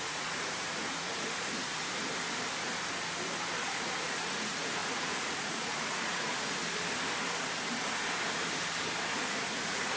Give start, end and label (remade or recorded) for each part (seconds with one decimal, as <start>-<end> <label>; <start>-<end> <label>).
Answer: 0.0-2.1 remade; 2.1-3.6 recorded; 3.6-6.6 remade; 6.6-9.1 recorded; 9.1-10.0 remade

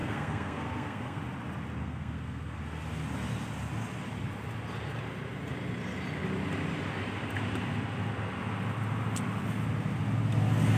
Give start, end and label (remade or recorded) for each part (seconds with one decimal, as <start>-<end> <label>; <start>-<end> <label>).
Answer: 0.0-1.2 remade; 1.2-1.8 recorded; 1.8-2.6 remade; 2.6-10.8 recorded